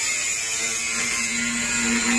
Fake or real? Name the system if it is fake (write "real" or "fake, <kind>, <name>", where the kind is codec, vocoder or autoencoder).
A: real